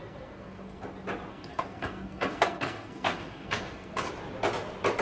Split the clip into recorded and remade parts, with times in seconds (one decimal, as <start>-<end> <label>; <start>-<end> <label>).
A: 0.0-0.8 remade; 0.8-1.3 recorded; 1.3-4.1 remade; 4.1-5.0 recorded